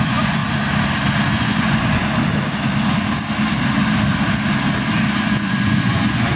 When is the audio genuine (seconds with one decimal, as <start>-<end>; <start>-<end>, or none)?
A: 0.4-1.3; 2.0-5.2

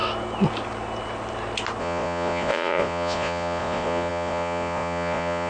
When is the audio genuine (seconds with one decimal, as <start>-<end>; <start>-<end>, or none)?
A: 0.0-1.8

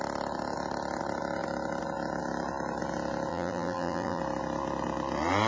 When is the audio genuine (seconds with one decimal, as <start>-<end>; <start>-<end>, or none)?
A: 0.0-3.3; 4.2-5.5

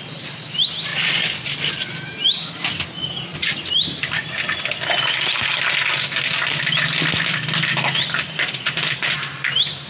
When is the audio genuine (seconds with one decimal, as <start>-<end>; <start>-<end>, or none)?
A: 0.0-0.9; 1.9-4.2; 5.7-9.9

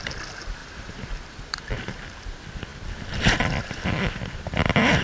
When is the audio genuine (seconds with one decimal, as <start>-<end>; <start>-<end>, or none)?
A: 0.0-0.6; 2.0-5.0

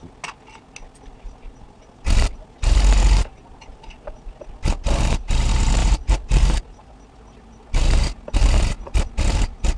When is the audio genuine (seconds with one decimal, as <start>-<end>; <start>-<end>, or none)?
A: 0.0-5.8; 6.6-9.8

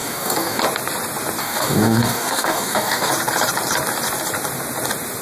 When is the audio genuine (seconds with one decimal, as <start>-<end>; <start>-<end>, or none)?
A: 0.6-1.4; 3.1-5.2

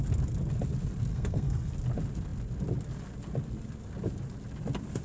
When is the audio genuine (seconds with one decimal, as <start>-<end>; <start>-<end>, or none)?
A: 0.0-1.1; 1.7-5.0